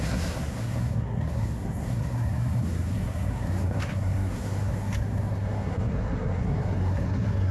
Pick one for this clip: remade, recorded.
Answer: remade